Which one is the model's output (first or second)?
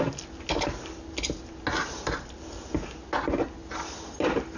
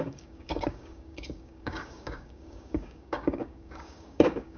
second